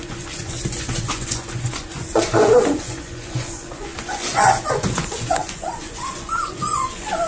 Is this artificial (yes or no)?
yes